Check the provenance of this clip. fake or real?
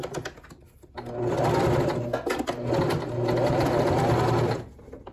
real